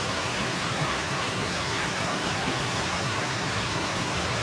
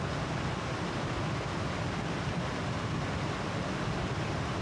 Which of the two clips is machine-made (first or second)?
first